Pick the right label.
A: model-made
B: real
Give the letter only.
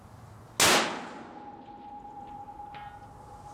B